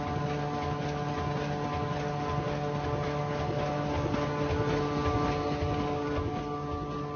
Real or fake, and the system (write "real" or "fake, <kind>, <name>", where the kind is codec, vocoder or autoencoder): real